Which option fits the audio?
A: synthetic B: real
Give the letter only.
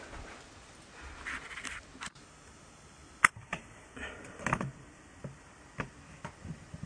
B